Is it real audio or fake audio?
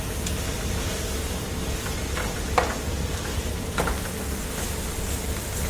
real